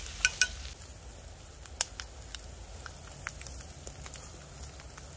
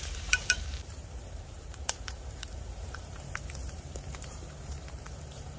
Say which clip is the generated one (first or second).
second